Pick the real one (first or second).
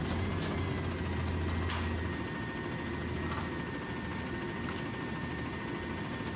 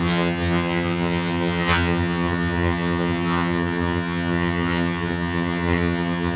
first